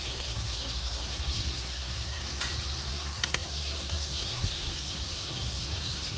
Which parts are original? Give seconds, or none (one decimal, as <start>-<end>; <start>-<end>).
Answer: 2.2-2.9